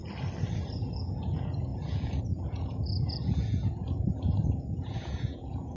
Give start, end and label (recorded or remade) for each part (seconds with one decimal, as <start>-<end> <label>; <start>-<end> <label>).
0.0-0.7 recorded; 0.7-5.8 remade